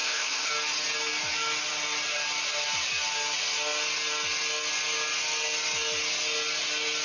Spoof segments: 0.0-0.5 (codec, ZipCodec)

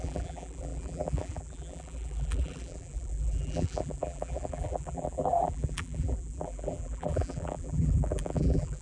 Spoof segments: 0.0-8.8 (vocoder, BigVGAN v2)

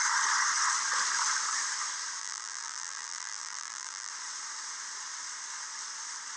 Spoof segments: 2.2-4.1 (vocoder, BigVGAN v2)

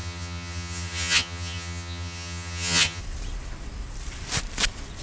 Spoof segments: 0.0-3.0 (vocoder, HiFi-GAN)

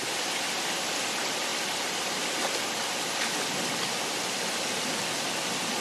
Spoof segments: none

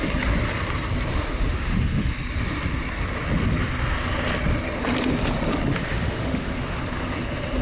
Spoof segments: 1.1-2.1 (autoencoder, DAC-VAE); 5.7-6.8